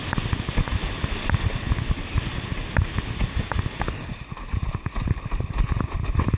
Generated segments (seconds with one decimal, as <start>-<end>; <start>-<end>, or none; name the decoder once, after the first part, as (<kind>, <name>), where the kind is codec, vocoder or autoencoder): none